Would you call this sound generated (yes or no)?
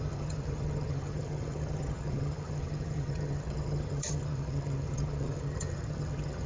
yes